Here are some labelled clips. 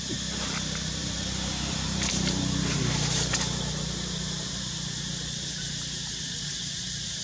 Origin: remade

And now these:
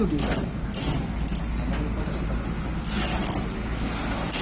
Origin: recorded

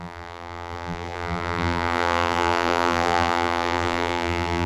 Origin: remade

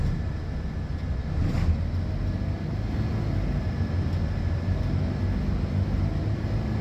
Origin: recorded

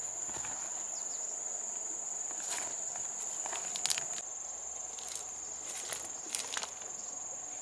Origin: recorded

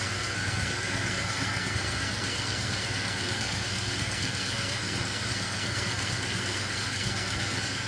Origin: remade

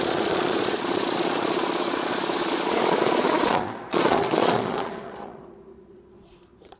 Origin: remade